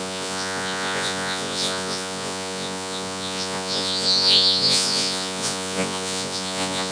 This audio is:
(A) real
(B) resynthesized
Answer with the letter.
B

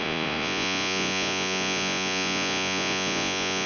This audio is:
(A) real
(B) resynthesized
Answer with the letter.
B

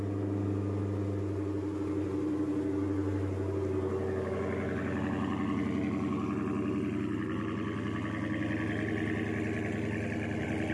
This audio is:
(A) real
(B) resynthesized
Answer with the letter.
A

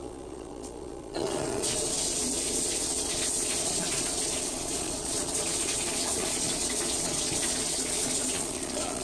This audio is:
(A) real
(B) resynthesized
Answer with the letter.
B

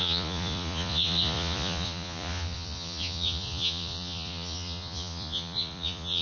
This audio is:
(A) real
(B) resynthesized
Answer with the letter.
B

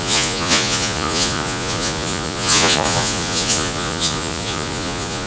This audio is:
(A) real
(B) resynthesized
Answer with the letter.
B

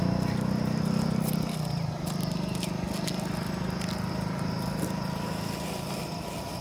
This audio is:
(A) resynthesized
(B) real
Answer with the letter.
B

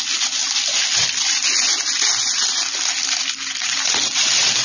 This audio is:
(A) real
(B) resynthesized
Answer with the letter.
A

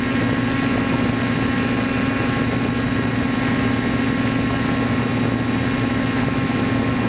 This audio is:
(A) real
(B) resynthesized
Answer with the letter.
A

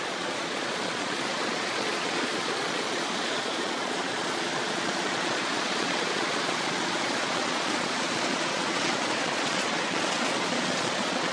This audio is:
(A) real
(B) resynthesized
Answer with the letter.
B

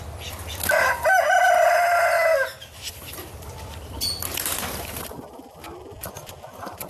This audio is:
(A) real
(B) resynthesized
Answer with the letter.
A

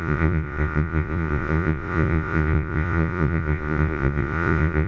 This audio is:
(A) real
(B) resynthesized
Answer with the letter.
B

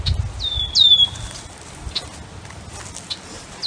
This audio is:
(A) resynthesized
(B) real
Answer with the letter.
B